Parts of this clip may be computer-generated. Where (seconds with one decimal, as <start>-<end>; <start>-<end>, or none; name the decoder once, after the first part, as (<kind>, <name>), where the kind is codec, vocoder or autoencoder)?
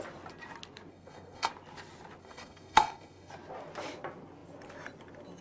0.9-1.5 (codec, SNAC); 2.2-3.3